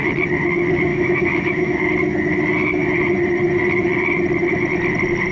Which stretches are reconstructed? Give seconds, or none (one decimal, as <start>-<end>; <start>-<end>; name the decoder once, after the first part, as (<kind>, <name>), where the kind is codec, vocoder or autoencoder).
0.9-1.9 (autoencoder, DAC-VAE)